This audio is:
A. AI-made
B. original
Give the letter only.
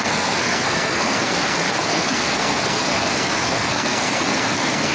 A